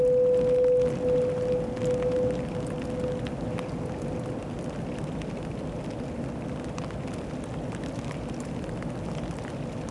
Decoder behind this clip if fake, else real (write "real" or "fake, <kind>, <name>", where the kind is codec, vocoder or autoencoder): real